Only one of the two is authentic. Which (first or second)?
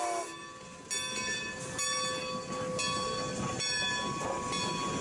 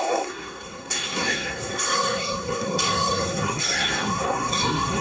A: first